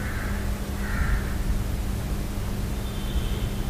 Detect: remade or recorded recorded